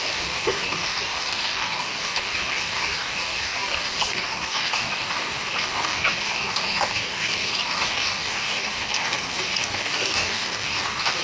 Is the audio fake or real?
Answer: fake